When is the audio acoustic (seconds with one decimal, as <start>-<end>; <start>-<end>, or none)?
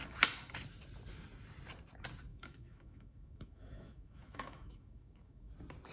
0.0-2.3; 5.5-5.9